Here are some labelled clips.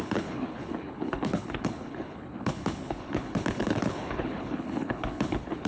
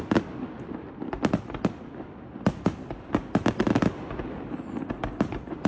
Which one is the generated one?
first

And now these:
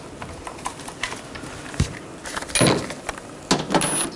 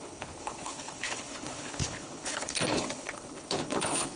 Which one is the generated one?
second